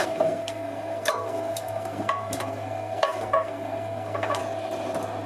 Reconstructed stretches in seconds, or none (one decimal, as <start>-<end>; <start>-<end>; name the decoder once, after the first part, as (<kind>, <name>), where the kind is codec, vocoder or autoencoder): 0.0-4.4 (codec, SNAC)